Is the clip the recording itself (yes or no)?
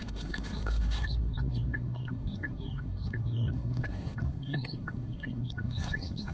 no